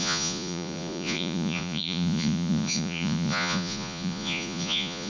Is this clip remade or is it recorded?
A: remade